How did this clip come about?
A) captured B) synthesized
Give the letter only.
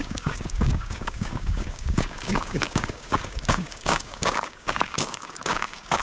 B